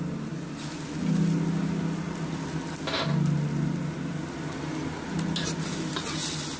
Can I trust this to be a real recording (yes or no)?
yes